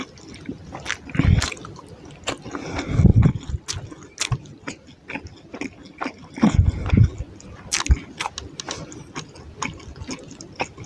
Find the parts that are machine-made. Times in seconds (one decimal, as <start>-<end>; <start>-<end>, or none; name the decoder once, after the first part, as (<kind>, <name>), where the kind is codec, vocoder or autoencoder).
none